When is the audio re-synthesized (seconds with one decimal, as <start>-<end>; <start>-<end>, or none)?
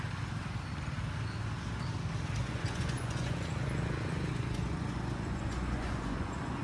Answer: 2.4-6.6